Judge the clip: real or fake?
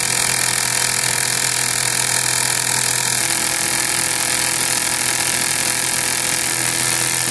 real